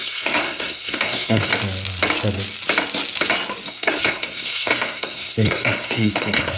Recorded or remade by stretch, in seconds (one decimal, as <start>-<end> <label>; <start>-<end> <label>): 0.0-1.5 remade; 1.5-3.7 recorded; 3.7-6.6 remade